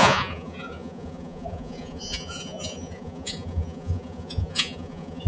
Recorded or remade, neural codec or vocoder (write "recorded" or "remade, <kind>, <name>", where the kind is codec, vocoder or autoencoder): remade, vocoder, Vocos